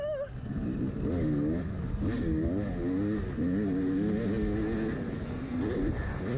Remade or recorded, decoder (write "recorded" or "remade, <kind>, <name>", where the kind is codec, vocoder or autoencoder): recorded